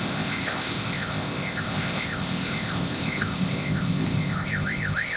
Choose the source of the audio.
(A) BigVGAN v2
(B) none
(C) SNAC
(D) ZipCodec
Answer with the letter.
D